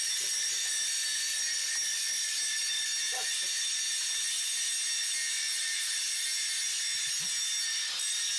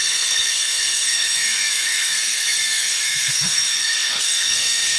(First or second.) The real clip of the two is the first